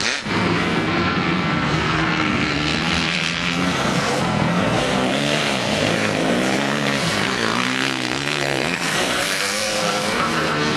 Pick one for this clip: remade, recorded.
remade